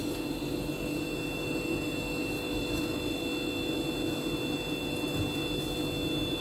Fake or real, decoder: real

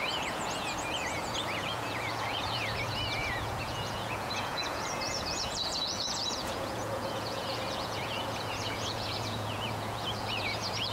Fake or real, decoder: fake, vocoder, Vocos